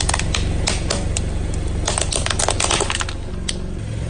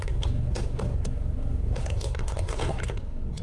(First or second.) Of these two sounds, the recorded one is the first